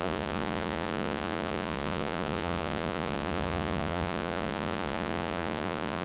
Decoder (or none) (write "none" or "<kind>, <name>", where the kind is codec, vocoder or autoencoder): vocoder, Vocos